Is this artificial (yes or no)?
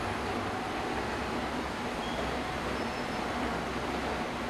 no